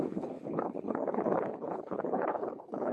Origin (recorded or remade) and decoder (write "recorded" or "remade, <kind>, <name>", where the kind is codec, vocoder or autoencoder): remade, codec, HILCodec